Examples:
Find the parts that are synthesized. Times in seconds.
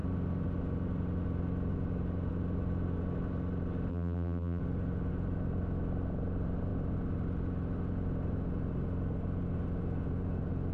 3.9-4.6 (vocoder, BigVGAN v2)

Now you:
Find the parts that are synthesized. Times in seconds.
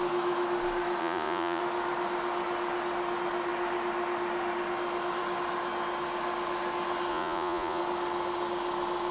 1.0-1.6 (vocoder, Vocos); 7.1-7.8